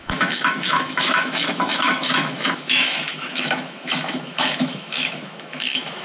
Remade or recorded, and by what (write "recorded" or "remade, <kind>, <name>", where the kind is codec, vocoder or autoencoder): remade, autoencoder, DAC-VAE